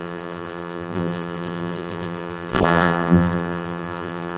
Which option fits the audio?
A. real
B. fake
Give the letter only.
B